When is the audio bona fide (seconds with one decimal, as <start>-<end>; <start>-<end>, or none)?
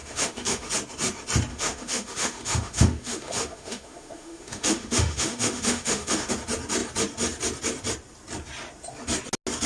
0.7-1.5; 6.3-9.7